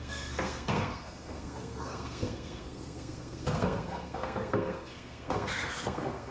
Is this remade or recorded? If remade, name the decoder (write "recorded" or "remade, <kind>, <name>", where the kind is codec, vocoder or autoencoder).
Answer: remade, codec, SNAC